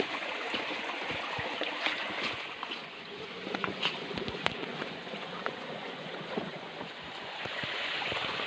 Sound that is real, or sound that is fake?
fake